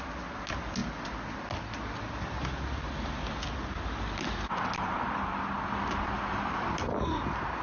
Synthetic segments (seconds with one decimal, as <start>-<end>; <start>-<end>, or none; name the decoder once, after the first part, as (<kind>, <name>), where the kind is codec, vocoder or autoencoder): none